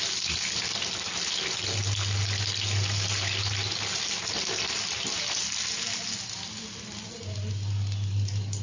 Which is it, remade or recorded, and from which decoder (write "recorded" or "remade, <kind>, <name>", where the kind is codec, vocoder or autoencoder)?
recorded